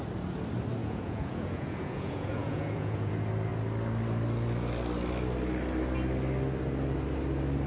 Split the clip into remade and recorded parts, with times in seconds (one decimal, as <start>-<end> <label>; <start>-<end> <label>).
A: 0.0-0.8 recorded; 0.8-3.1 remade; 3.1-7.7 recorded